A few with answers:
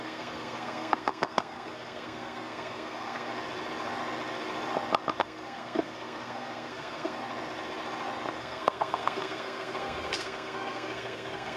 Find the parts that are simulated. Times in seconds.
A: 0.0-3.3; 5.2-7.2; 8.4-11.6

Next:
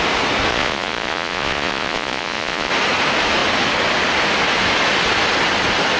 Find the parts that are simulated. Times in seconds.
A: 0.5-2.7

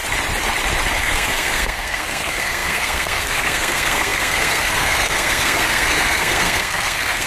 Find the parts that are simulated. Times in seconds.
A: 1.0-7.3

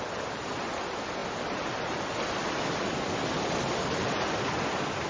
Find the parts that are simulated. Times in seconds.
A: none

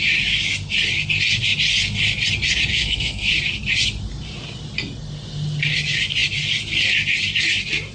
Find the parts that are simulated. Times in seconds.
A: 2.7-3.3

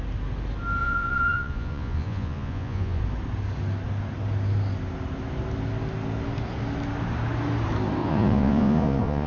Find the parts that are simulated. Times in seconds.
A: 0.8-3.0; 8.0-9.3

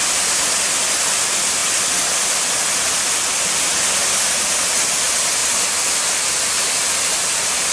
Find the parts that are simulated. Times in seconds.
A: none